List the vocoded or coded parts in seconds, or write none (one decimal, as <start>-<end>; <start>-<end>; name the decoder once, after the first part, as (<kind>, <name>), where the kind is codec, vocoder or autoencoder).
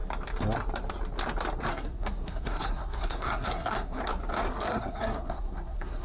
1.7-4.0 (codec, SNAC); 4.5-6.0